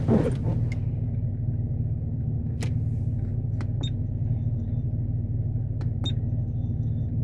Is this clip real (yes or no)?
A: yes